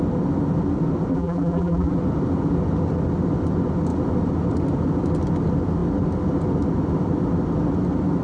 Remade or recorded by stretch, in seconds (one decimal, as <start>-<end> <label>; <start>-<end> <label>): 0.0-1.1 recorded; 1.1-1.9 remade; 1.9-8.2 recorded